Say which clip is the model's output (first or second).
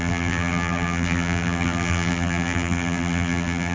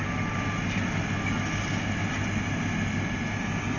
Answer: first